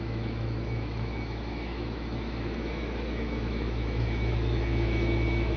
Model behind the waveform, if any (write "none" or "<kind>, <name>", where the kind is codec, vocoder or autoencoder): autoencoder, DAC-VAE